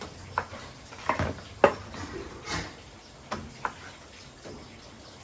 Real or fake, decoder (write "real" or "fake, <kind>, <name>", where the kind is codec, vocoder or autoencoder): real